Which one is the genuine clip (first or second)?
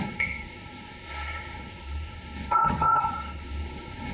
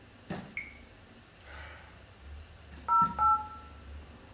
second